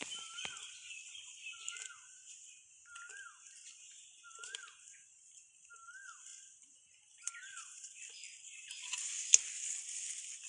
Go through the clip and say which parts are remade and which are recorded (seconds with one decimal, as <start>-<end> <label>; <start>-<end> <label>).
0.0-10.5 recorded